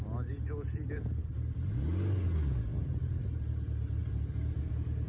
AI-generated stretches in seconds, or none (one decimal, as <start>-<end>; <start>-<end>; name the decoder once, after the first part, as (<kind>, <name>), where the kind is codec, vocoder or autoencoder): none